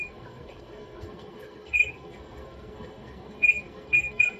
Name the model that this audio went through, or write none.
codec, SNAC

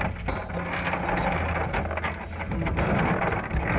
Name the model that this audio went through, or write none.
none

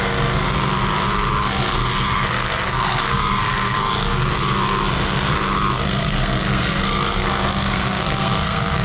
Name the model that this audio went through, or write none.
codec, SNAC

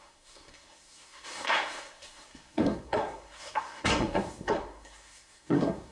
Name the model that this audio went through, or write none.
codec, SNAC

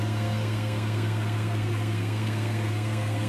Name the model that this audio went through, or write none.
codec, SNAC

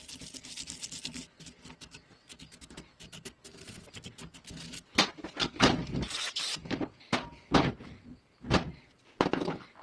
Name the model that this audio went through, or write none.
none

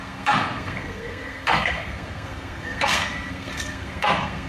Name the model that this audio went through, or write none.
codec, SNAC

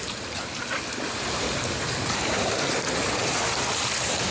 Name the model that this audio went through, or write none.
none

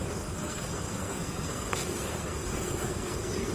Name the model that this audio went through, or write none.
codec, SNAC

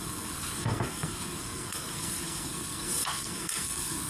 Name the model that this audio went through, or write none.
codec, SNAC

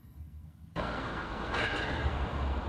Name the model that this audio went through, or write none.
codec, SNAC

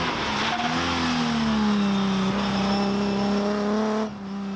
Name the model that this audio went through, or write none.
none